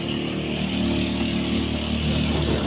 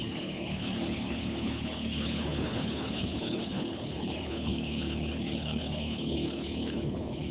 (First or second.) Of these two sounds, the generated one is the second